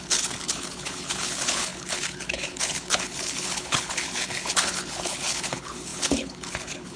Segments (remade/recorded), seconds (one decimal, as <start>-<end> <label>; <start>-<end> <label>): 0.0-7.0 remade